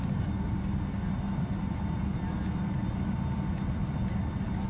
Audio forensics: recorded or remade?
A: recorded